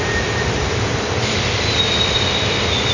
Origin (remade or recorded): recorded